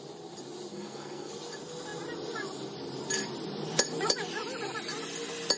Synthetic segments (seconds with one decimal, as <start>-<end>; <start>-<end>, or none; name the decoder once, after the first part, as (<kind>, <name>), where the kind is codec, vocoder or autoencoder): 0.7-1.3 (codec, SNAC)